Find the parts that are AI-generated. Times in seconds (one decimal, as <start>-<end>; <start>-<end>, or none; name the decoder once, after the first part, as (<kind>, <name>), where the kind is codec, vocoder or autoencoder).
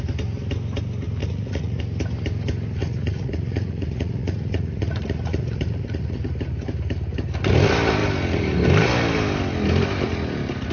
1.2-1.8 (vocoder, Vocos); 2.8-6.2